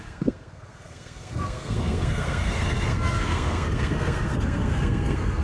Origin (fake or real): fake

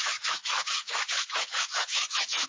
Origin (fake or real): fake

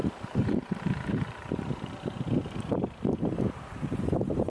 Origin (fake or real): fake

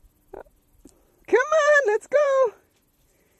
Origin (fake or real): fake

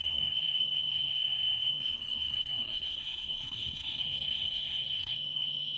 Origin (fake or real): fake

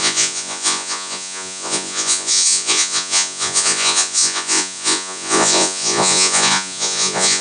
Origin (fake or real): fake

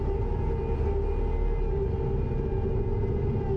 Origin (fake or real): real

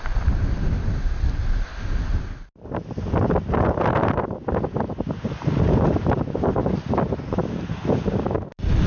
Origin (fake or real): real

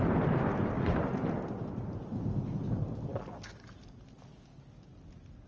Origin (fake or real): real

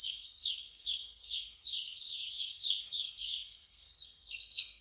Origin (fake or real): fake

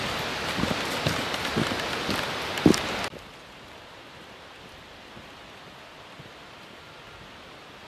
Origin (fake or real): real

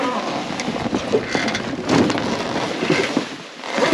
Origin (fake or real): real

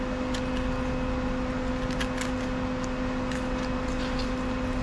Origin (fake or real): real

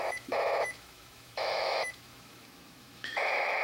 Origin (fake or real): fake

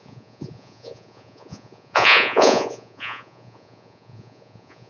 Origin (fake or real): fake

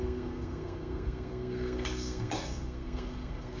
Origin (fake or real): fake